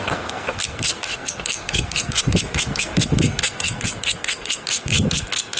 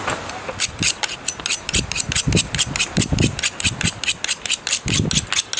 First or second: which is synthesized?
first